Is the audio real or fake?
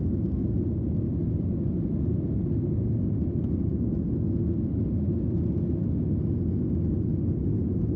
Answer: real